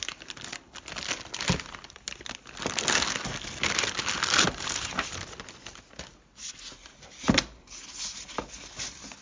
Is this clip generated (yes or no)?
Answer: no